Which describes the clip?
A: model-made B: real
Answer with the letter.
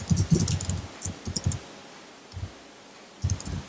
B